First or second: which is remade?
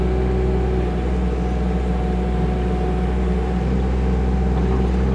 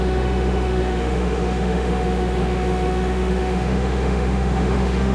second